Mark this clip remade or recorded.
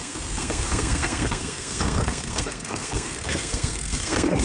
remade